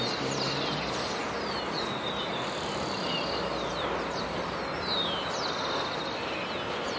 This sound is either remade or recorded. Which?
recorded